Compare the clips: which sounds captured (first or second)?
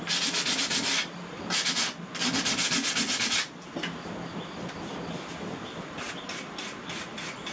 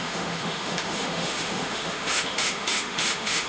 first